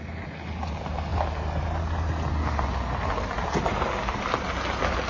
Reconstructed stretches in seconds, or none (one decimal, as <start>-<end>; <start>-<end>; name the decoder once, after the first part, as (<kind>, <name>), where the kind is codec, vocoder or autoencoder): none